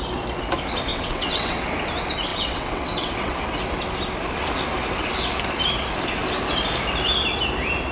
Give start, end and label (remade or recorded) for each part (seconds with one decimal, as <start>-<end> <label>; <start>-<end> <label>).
0.0-0.9 recorded; 0.9-1.7 remade; 1.7-2.3 recorded; 2.3-3.4 remade; 3.4-7.9 recorded